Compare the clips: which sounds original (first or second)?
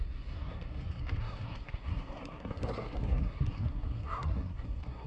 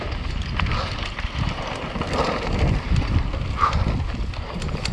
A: second